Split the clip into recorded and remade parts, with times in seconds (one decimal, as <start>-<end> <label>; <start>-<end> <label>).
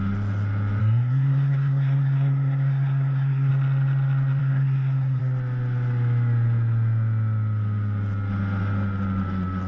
0.0-0.8 recorded; 0.8-3.5 remade; 3.5-4.4 recorded; 4.4-5.2 remade; 5.2-9.7 recorded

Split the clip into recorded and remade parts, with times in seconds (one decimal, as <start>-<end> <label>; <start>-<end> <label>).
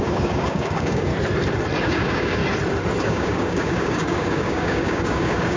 0.0-1.1 remade; 1.1-1.8 recorded; 1.8-2.4 remade; 2.4-3.0 recorded; 3.0-5.6 remade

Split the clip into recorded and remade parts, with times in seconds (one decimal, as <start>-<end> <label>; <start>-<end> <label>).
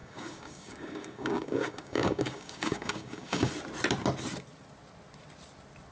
0.0-3.5 remade; 3.5-5.9 recorded